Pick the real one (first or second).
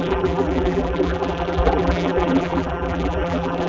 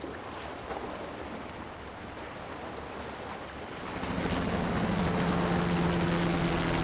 second